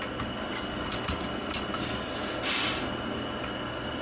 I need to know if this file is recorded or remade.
recorded